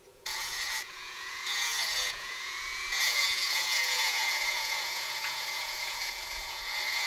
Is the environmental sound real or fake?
fake